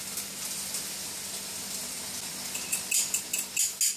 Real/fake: real